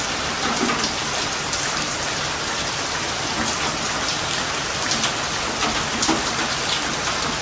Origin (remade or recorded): recorded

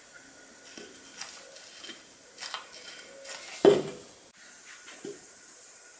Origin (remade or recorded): recorded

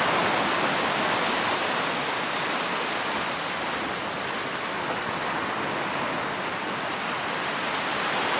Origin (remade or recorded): recorded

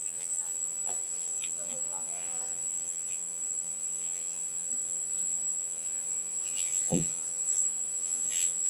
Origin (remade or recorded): remade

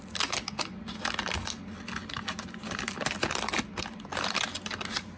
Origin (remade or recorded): recorded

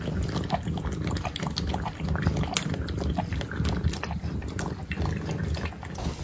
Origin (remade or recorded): recorded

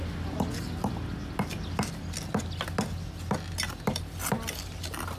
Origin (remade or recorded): recorded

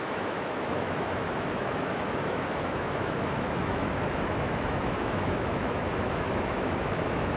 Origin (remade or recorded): remade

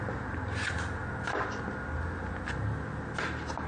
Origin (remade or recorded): recorded